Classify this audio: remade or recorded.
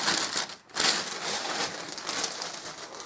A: recorded